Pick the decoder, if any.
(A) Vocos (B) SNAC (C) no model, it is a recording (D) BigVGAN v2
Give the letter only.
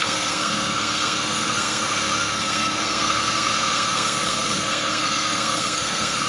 B